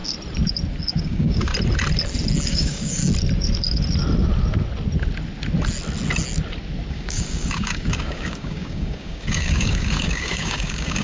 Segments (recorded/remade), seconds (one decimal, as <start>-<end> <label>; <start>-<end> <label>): 0.0-0.9 recorded; 0.9-1.5 remade; 1.5-2.5 recorded; 2.5-3.0 remade; 3.0-6.9 recorded; 6.9-11.0 remade